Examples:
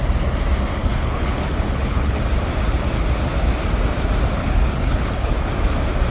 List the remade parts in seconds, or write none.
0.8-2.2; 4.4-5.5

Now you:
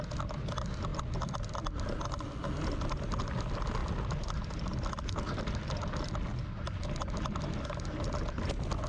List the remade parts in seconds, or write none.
none

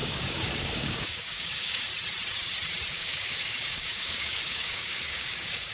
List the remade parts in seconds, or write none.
0.0-1.9; 2.9-5.7

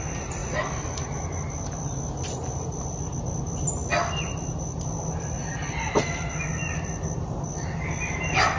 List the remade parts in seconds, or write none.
none

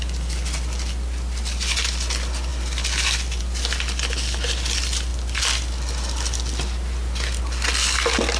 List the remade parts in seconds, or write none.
none

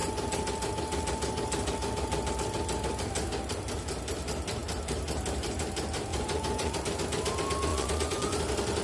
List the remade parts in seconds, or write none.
6.1-6.8; 7.7-8.4